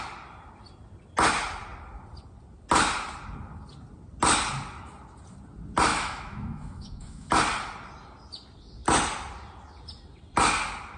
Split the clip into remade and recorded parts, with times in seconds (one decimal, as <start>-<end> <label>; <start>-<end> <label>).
0.0-5.9 recorded; 5.9-7.3 remade; 7.3-11.0 recorded